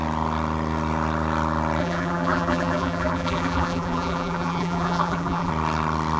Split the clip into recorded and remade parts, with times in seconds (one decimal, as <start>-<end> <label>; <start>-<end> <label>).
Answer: 0.0-1.8 recorded; 1.8-5.5 remade; 5.5-6.2 recorded